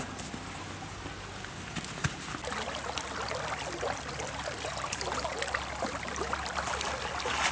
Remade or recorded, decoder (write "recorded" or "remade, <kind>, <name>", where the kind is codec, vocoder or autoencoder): recorded